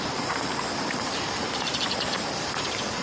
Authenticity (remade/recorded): remade